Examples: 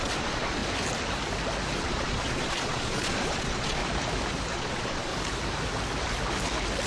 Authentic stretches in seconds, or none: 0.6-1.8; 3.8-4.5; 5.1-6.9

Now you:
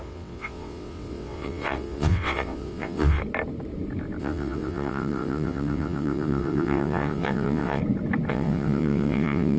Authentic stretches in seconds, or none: 3.2-4.2; 7.8-8.3

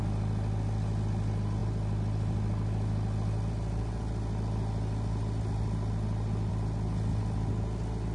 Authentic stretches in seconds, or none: 0.0-8.1